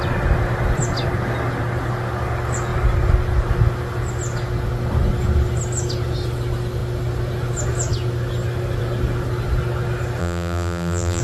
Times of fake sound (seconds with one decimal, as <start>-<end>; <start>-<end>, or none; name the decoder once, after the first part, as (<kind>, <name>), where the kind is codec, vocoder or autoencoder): 10.2-11.2 (vocoder, BigVGAN v2)